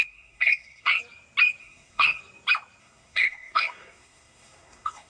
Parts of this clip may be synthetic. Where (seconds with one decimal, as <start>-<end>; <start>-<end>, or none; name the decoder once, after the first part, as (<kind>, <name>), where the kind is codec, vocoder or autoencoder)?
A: 0.0-1.0 (codec, SNAC); 1.6-2.2; 2.8-5.1